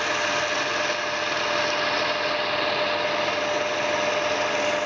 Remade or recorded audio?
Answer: recorded